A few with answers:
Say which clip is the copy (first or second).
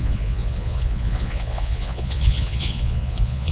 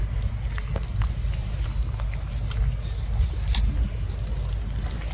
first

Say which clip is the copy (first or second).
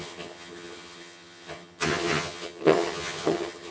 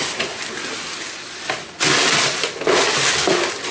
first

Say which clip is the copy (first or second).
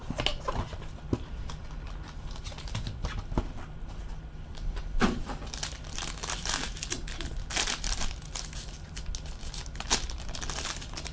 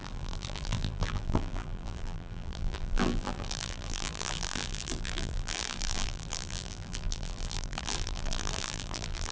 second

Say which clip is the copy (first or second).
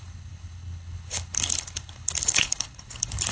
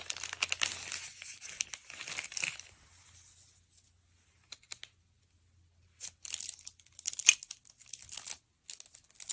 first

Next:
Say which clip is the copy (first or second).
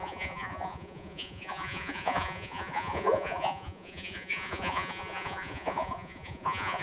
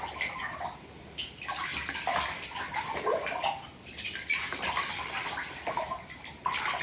first